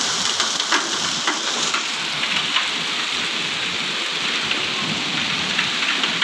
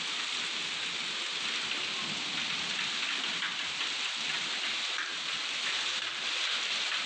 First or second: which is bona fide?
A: second